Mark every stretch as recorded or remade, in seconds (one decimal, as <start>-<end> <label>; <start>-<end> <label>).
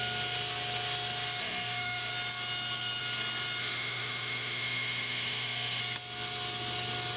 0.0-1.4 recorded; 1.4-2.1 remade; 2.1-3.6 recorded; 3.6-5.8 remade; 5.8-7.2 recorded